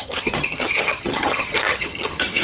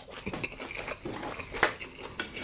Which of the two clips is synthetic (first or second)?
first